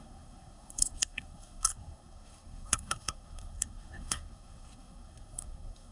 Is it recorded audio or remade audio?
remade